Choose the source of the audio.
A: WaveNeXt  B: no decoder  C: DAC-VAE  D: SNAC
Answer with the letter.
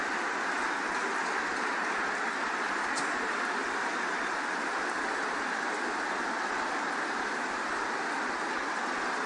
B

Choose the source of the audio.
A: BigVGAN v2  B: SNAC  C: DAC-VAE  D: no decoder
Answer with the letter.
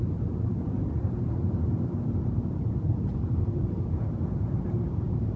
A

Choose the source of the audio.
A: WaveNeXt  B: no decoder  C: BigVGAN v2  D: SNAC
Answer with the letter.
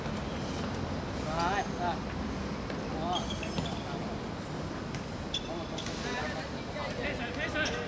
B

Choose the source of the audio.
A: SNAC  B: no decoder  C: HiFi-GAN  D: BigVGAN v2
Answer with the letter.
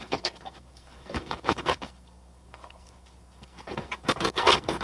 A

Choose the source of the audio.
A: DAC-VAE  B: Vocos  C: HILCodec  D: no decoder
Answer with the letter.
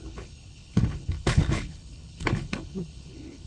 C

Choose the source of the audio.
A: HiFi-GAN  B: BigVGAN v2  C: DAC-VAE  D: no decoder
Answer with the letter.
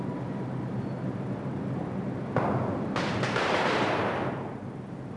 D